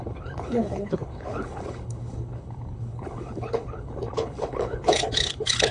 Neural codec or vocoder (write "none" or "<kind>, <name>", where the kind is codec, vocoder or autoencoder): codec, HILCodec